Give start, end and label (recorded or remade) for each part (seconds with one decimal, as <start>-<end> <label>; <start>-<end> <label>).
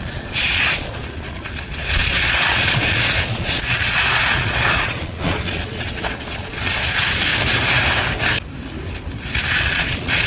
0.0-7.3 remade; 7.3-9.5 recorded; 9.5-10.3 remade